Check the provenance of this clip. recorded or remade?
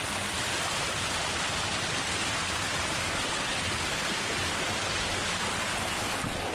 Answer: recorded